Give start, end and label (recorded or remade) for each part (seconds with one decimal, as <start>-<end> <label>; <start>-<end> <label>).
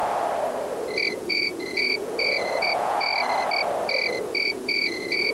0.0-1.1 recorded; 1.1-3.1 remade; 3.1-4.4 recorded; 4.4-5.3 remade